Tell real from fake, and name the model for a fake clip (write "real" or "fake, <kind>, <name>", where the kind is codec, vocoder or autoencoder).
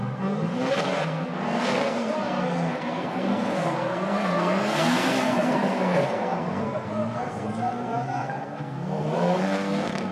fake, codec, SNAC